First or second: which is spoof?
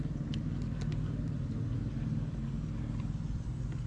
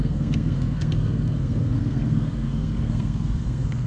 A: second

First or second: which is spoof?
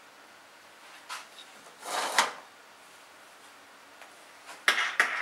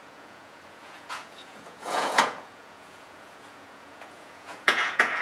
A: second